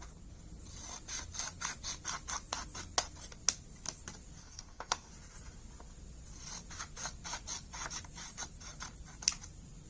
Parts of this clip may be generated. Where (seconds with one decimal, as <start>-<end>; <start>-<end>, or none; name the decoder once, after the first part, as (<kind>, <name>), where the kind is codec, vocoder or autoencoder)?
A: 4.4-5.1 (codec, SNAC)